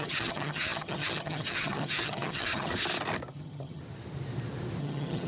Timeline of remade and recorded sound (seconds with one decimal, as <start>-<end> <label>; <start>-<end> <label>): 0.0-2.7 remade; 2.7-3.3 recorded; 3.3-3.8 remade; 3.8-4.8 recorded; 4.8-5.3 remade